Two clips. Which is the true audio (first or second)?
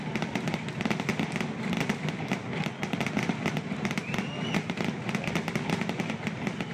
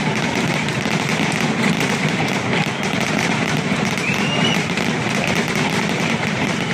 first